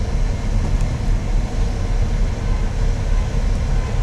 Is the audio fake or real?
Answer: real